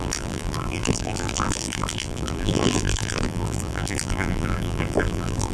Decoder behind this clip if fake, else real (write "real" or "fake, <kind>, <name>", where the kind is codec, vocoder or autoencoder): fake, vocoder, BigVGAN v2